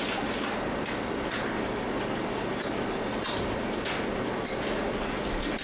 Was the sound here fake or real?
real